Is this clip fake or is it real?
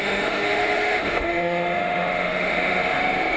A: fake